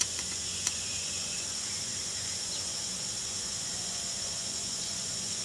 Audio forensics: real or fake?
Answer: fake